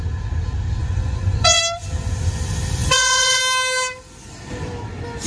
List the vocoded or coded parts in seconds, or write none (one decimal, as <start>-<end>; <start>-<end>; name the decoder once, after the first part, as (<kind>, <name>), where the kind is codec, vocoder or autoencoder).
0.8-1.6 (vocoder, Vocos); 2.8-3.4